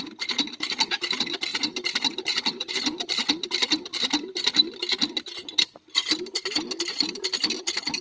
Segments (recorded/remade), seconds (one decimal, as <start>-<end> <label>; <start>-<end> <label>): 0.0-8.0 recorded